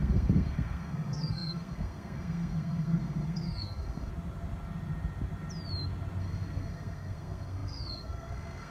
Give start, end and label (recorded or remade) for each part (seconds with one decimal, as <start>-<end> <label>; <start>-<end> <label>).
0.0-4.1 remade; 4.1-6.2 recorded; 6.2-8.7 remade